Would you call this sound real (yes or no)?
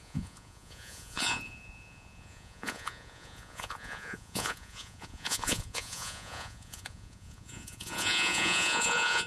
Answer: no